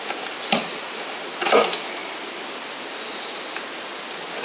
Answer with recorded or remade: recorded